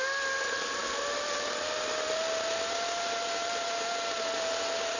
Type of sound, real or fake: real